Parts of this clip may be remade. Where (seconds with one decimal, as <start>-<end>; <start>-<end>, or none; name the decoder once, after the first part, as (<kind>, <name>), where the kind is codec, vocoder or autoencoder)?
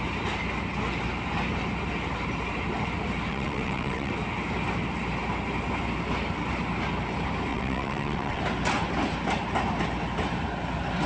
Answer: 3.3-4.1 (vocoder, WaveNeXt); 7.5-8.4